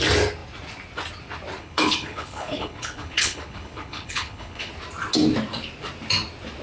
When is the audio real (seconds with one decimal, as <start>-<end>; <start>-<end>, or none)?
0.0-1.6; 4.7-6.6